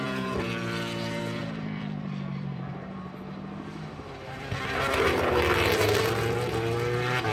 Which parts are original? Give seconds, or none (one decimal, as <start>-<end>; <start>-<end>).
0.0-1.4; 5.3-7.3